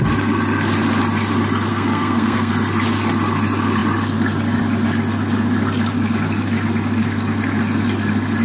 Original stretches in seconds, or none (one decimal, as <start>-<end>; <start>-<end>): 0.0-1.7; 2.5-8.4